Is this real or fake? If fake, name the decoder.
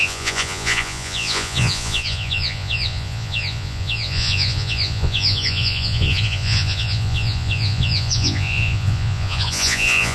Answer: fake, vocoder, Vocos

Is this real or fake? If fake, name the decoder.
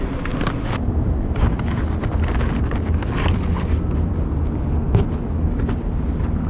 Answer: real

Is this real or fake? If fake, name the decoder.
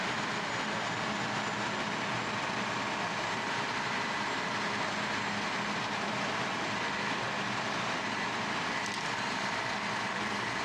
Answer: real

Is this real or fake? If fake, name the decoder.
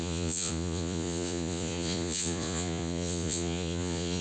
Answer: fake, vocoder, Vocos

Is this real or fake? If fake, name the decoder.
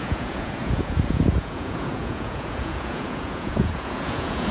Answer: fake, vocoder, Vocos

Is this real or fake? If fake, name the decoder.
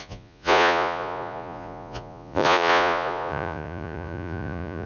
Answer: fake, vocoder, Vocos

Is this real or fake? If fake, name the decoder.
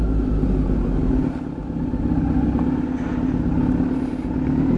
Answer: real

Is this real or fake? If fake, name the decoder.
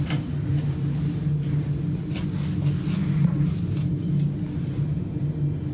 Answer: real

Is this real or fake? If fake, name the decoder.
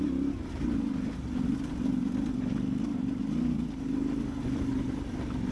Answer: real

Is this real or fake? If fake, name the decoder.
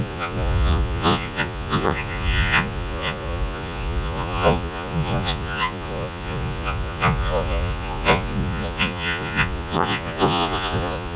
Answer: fake, vocoder, Vocos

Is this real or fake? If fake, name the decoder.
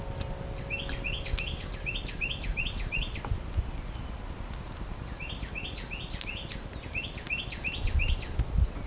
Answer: real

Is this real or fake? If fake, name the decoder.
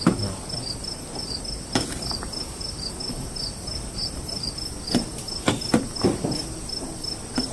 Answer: real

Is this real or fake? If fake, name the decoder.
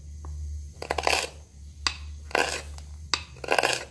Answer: real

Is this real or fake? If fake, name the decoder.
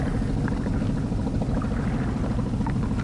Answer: real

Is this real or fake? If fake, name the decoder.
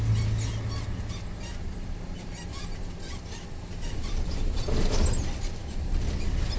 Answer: real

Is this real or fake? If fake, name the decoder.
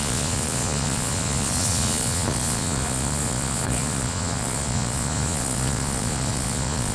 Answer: fake, vocoder, Vocos